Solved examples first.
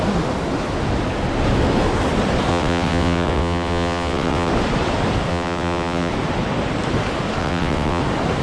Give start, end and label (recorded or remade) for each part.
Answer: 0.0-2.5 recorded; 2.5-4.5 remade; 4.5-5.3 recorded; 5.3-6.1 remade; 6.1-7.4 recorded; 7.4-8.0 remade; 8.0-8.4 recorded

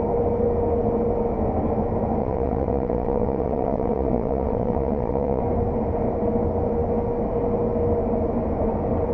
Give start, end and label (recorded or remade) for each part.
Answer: 0.0-2.2 recorded; 2.2-5.4 remade; 5.4-9.1 recorded